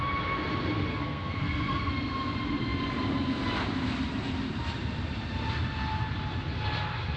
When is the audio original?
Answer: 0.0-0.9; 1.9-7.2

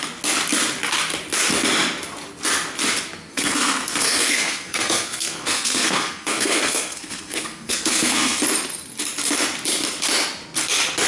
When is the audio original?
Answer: 0.0-3.3; 8.4-11.1

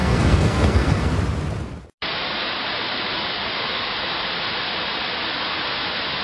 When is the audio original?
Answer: 1.1-6.2